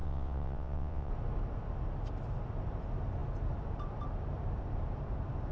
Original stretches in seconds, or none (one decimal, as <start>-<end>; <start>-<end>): 1.1-5.5